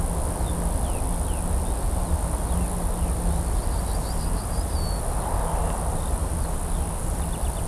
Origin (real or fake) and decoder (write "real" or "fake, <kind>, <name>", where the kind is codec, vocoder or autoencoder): real